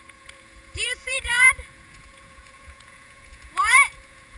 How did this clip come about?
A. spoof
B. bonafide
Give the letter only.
A